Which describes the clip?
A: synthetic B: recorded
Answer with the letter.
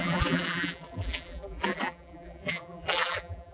A